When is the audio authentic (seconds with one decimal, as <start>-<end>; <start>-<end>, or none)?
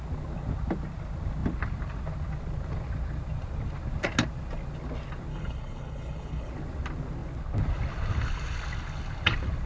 0.0-5.3; 6.5-9.7